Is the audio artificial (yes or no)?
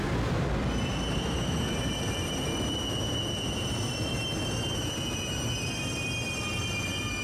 no